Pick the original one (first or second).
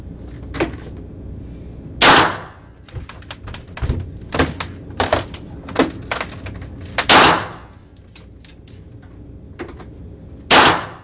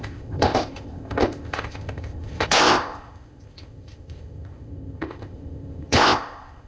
first